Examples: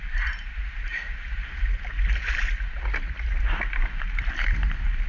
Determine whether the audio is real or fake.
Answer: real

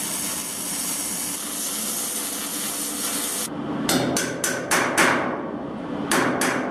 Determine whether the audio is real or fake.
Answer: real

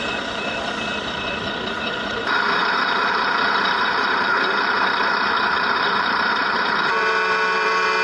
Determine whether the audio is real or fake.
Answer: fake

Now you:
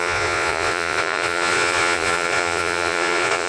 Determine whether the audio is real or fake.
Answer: fake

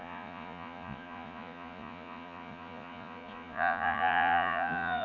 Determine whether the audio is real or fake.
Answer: fake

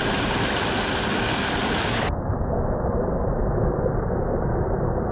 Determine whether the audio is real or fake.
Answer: real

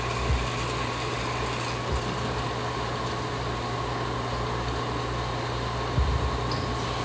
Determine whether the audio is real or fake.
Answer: real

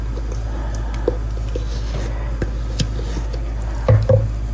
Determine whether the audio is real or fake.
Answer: real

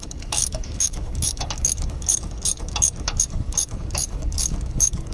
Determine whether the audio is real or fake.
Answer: fake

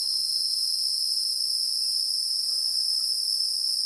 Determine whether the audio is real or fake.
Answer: real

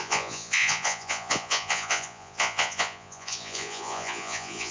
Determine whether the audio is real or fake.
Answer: fake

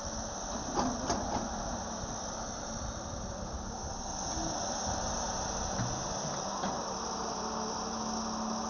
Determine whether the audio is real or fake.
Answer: real